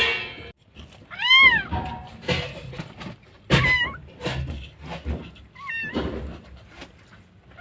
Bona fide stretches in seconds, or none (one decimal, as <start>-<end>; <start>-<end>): 0.0-2.5; 3.6-4.0; 5.2-7.6